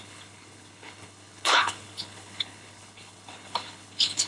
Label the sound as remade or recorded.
remade